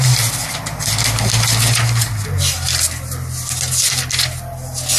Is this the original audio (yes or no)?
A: yes